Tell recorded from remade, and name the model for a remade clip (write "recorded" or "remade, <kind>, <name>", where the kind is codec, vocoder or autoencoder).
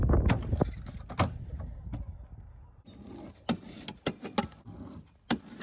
recorded